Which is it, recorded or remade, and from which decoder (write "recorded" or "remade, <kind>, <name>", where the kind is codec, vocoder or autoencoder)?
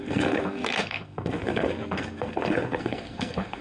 remade, codec, SNAC